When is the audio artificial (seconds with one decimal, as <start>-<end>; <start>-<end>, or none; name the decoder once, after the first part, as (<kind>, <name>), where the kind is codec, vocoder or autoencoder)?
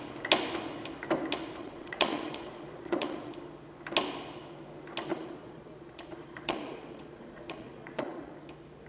1.6-3.3 (vocoder, Vocos); 5.1-8.3